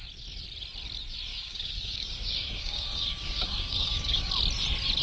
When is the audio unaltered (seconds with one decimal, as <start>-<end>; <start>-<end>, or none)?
0.0-1.3; 4.3-5.0